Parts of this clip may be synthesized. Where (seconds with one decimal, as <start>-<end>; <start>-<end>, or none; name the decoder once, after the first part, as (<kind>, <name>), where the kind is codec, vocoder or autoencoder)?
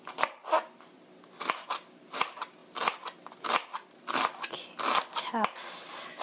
none